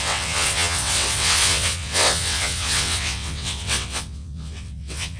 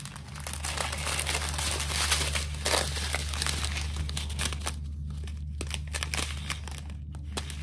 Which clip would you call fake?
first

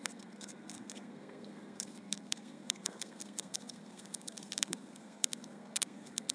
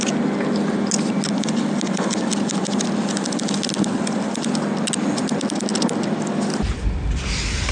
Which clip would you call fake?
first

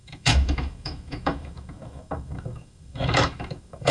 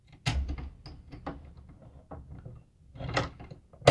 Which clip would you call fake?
first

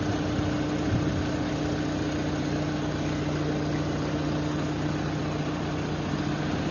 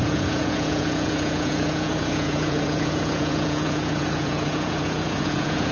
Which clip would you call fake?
second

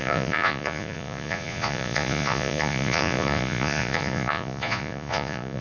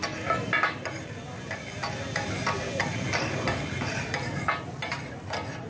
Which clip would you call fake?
first